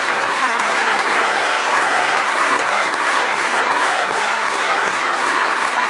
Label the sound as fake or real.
fake